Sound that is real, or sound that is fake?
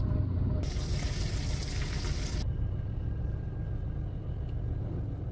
real